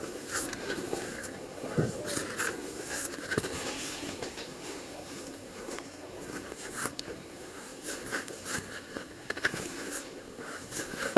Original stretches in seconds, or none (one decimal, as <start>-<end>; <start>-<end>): 2.0-2.5